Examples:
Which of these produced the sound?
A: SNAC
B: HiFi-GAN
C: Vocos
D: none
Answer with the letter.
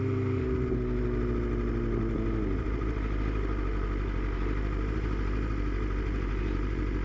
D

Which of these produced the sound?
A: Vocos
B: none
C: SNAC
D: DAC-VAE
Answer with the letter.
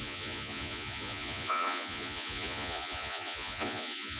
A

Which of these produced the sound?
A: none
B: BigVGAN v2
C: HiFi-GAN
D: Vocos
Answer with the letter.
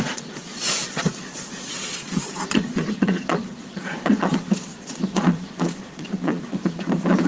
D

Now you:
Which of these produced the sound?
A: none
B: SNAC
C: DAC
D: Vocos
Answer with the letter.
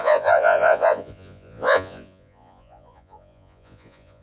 D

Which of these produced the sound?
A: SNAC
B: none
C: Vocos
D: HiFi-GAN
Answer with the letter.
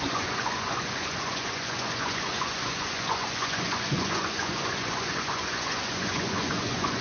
C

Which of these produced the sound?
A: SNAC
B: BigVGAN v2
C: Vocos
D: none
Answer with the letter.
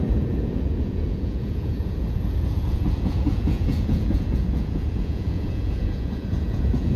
C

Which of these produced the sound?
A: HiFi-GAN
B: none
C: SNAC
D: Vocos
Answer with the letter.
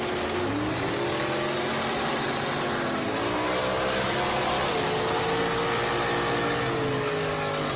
B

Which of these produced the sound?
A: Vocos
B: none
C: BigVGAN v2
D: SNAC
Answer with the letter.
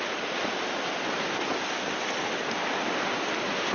B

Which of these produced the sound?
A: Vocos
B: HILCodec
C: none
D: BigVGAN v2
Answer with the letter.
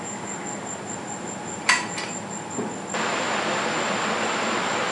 C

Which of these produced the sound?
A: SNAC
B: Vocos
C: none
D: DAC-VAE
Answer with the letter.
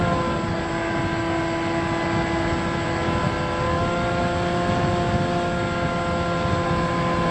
C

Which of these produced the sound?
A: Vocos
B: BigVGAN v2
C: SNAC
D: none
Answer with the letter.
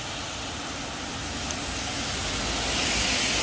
D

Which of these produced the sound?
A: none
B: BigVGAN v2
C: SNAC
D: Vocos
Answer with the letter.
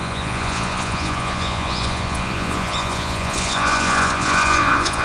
D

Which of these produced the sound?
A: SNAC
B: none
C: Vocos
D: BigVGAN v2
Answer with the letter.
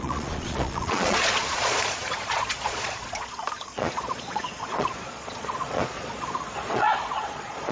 C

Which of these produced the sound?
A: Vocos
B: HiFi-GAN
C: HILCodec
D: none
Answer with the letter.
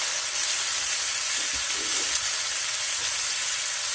D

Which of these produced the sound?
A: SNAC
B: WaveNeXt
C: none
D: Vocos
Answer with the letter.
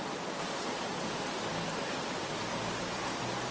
C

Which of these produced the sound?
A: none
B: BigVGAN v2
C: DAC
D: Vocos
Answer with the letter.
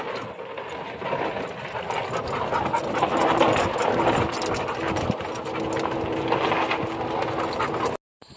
A